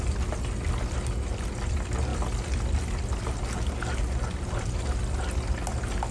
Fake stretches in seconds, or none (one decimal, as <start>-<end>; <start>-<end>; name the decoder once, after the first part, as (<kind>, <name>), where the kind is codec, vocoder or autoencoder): none